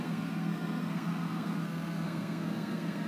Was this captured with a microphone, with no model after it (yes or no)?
no